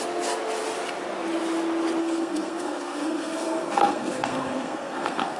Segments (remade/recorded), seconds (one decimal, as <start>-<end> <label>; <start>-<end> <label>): 0.0-2.0 recorded; 2.0-5.4 remade

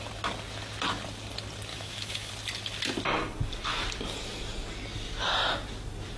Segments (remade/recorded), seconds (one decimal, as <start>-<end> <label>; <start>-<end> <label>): 0.0-1.7 recorded; 1.7-2.3 remade; 2.3-6.2 recorded

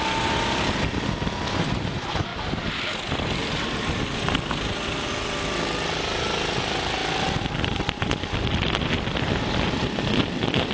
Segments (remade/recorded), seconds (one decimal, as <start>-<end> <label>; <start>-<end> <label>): 0.0-10.7 recorded

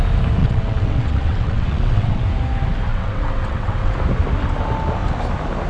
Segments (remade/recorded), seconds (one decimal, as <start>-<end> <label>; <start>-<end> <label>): 0.0-0.4 recorded; 0.4-2.2 remade; 2.2-2.9 recorded; 2.9-3.9 remade; 3.9-5.7 recorded